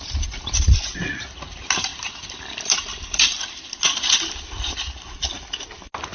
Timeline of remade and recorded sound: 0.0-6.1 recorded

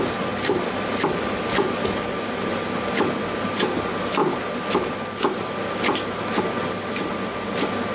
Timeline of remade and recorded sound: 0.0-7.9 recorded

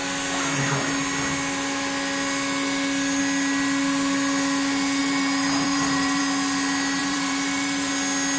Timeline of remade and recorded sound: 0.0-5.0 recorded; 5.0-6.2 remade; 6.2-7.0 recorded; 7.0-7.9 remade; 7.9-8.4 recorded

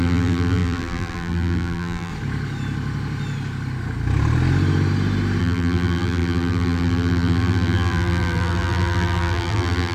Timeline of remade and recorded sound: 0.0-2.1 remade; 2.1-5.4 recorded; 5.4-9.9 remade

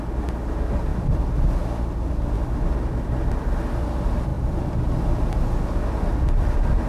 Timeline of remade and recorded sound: 0.0-6.9 recorded

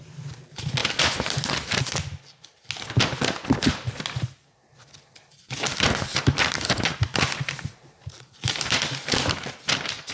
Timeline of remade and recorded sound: 0.0-5.3 recorded; 5.3-8.8 remade; 8.8-10.1 recorded

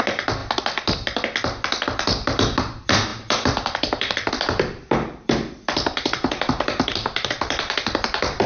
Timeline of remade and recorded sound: 0.0-0.4 remade; 0.4-2.6 recorded; 2.6-8.5 remade

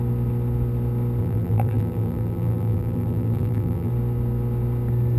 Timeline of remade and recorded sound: 0.0-1.2 recorded; 1.2-3.9 remade; 3.9-5.2 recorded